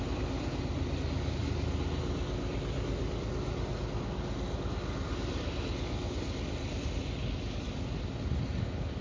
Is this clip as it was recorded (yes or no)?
yes